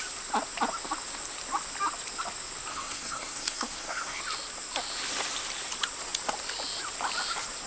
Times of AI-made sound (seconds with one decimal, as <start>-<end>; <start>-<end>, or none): 2.7-4.2